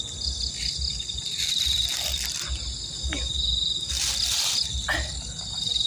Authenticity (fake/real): real